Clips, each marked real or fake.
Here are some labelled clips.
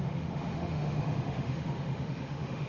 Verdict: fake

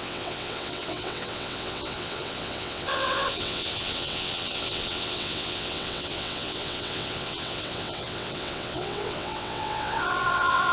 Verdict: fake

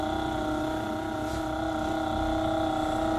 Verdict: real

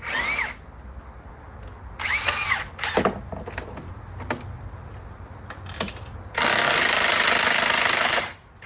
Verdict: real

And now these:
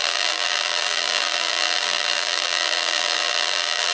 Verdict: fake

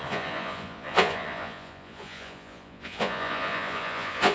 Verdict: fake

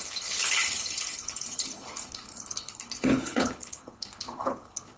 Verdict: fake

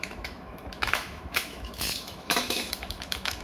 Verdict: fake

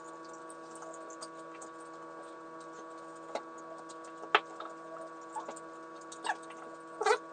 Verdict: real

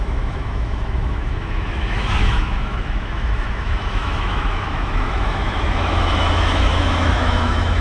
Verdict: fake